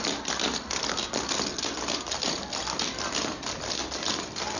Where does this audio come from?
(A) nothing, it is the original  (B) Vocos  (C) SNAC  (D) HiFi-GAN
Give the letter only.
A